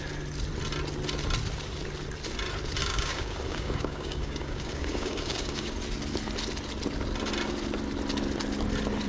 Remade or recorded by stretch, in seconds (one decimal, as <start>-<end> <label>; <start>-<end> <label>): 0.0-2.8 recorded; 2.8-5.7 remade; 5.7-9.1 recorded